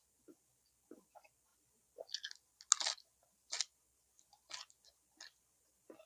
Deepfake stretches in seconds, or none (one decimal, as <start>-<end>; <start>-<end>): none